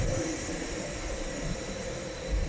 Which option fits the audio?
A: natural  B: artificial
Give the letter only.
B